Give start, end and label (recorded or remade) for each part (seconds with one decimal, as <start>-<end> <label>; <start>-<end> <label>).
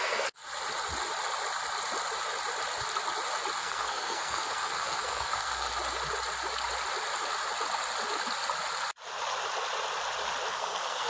0.0-0.4 remade; 0.4-3.6 recorded; 3.6-5.7 remade; 5.7-10.5 recorded; 10.5-11.1 remade